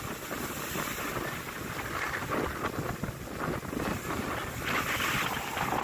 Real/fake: real